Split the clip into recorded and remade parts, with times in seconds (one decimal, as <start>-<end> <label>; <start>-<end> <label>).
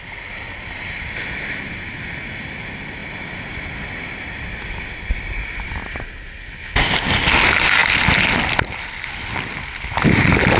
0.0-10.6 recorded